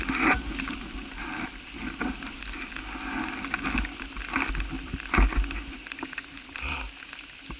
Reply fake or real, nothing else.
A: real